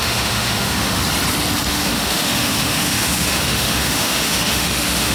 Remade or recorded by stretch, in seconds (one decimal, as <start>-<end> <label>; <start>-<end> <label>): 0.0-1.0 remade; 1.0-1.7 recorded; 1.7-5.1 remade